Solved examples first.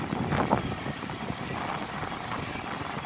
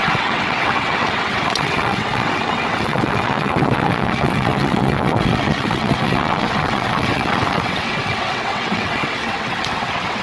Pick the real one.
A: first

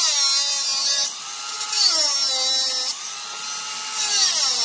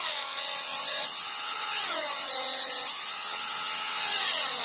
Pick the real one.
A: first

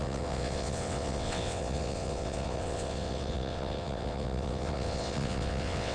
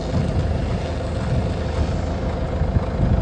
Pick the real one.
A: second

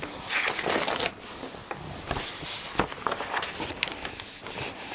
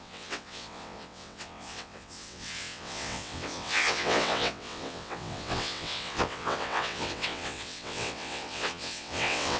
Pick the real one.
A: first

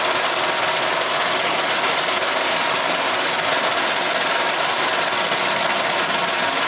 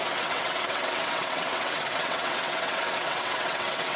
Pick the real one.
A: first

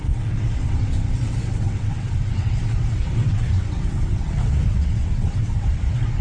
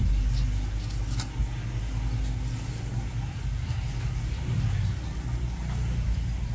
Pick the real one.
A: second